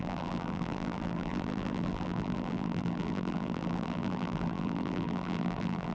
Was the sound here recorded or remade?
remade